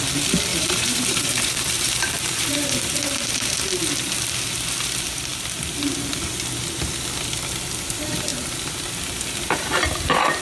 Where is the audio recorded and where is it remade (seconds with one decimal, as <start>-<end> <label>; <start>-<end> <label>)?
0.0-0.5 recorded; 0.5-3.7 remade; 3.7-10.4 recorded